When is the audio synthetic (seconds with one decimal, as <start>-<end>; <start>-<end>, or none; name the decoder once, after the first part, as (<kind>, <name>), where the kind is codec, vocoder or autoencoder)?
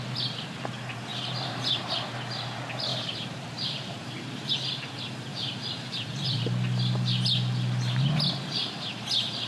1.1-1.8 (vocoder, BigVGAN v2); 2.9-4.5; 5.3-6.3; 8.6-9.5